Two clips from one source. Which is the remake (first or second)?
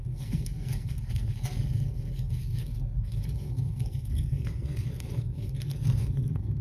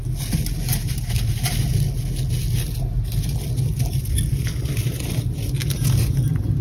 first